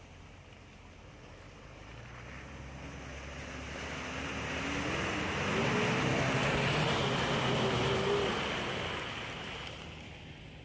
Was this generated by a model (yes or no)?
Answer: no